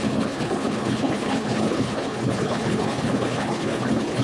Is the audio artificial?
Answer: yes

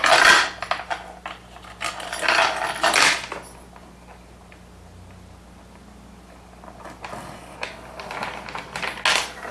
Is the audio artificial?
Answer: no